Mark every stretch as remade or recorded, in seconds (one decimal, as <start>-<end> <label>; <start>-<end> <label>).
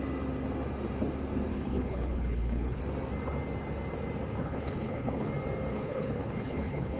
0.0-1.5 recorded; 1.5-2.8 remade; 2.8-4.3 recorded; 4.3-5.3 remade; 5.3-5.7 recorded; 5.7-7.0 remade